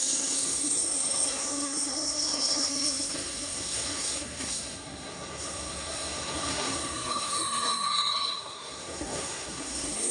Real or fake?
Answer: fake